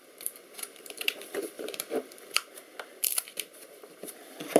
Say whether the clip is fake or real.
fake